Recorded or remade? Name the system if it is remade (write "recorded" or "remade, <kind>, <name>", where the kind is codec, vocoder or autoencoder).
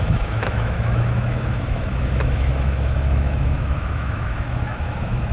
remade, autoencoder, DAC-VAE